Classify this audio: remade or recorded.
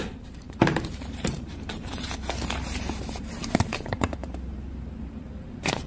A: remade